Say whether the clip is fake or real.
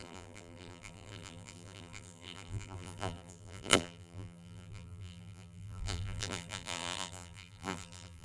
fake